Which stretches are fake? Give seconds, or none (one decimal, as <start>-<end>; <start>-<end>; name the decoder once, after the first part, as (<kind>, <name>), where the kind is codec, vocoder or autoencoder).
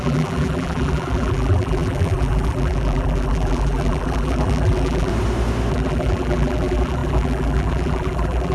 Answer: 0.0-5.1 (vocoder, BigVGAN v2); 5.7-8.5